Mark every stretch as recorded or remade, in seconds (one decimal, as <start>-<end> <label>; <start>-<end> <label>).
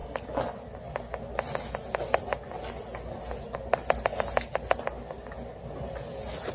0.0-6.5 recorded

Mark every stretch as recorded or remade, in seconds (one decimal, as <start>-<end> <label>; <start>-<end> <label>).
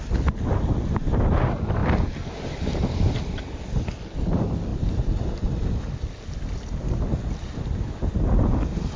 0.0-1.8 recorded; 1.8-4.0 remade; 4.0-9.0 recorded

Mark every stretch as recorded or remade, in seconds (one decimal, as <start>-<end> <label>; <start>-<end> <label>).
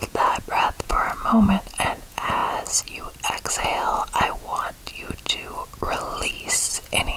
0.0-2.4 remade; 2.4-3.5 recorded; 3.5-4.5 remade; 4.5-6.5 recorded; 6.5-7.2 remade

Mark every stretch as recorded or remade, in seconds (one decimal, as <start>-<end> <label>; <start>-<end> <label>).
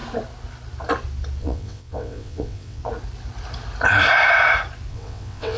0.0-1.4 recorded; 1.4-2.8 remade; 2.8-4.9 recorded; 4.9-5.6 remade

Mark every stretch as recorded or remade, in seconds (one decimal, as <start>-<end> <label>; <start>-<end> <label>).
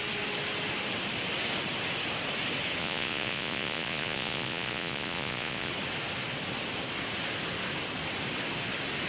0.0-2.8 recorded; 2.8-5.7 remade; 5.7-9.1 recorded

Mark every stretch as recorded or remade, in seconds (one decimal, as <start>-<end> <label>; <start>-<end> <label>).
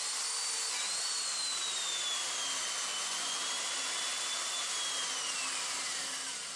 0.0-2.9 recorded; 2.9-3.4 remade; 3.4-6.6 recorded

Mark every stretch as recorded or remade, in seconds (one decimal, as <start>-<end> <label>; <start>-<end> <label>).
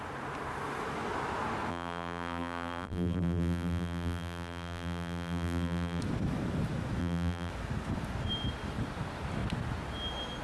0.0-1.7 recorded; 1.7-6.0 remade; 6.0-7.0 recorded; 7.0-7.5 remade; 7.5-10.4 recorded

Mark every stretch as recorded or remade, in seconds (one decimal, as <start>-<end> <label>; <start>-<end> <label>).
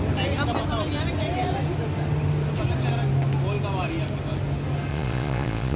0.0-4.9 recorded; 4.9-5.8 remade